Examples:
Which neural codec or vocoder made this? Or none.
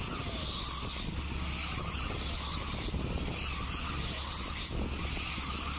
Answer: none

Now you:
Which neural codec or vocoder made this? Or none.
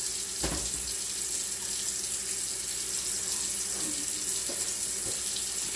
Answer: none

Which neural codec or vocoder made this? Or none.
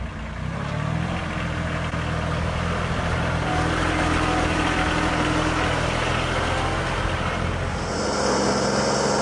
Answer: none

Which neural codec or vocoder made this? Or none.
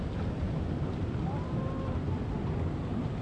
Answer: none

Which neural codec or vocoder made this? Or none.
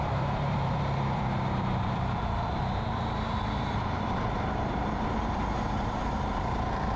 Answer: vocoder, BigVGAN v2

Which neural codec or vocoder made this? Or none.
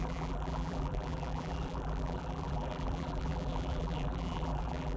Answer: vocoder, BigVGAN v2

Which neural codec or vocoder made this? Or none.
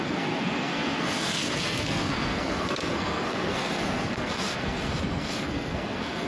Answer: codec, SNAC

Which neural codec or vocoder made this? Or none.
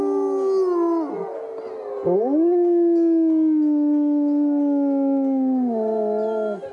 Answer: none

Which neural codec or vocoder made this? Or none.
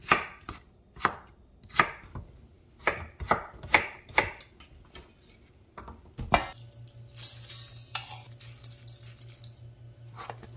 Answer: none